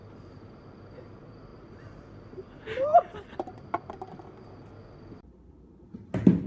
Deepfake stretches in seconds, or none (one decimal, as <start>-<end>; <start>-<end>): 1.5-3.9

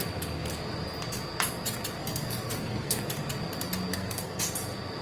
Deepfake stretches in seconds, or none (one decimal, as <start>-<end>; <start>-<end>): 2.0-3.1; 3.9-4.4

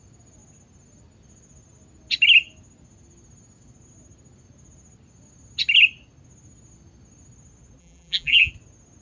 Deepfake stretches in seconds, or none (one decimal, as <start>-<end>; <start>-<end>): 7.8-8.5

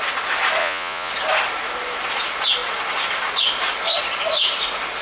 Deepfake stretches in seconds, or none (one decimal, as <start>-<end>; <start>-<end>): 0.6-1.1

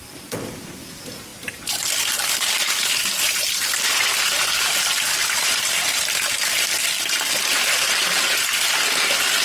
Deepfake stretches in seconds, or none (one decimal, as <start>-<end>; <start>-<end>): none

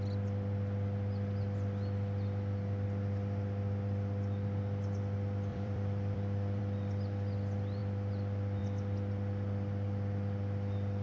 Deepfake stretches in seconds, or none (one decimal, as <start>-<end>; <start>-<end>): 5.5-6.6; 7.8-8.6

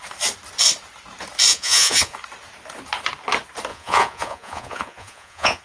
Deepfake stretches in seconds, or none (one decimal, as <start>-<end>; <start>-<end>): 1.5-2.2; 3.7-5.6